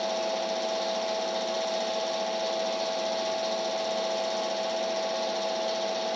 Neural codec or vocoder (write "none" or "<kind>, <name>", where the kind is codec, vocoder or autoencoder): none